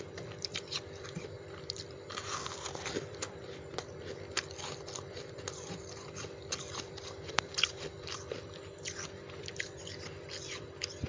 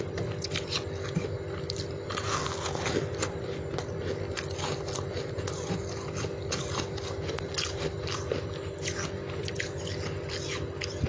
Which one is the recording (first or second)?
second